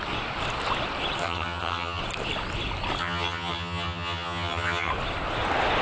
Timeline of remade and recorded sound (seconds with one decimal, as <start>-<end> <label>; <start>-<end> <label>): 0.0-1.2 recorded; 1.2-2.0 remade; 2.0-3.0 recorded; 3.0-4.9 remade; 4.9-5.8 recorded